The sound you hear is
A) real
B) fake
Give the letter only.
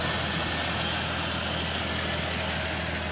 A